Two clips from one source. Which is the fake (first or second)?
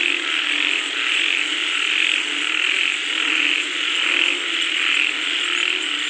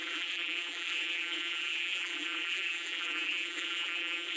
second